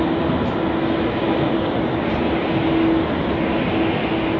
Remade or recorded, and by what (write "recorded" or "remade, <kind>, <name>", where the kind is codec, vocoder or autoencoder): recorded